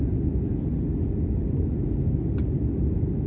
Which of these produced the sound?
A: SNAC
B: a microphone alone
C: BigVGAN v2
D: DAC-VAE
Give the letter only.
B